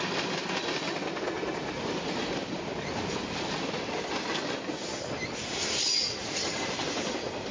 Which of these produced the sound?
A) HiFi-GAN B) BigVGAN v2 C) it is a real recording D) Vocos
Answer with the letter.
C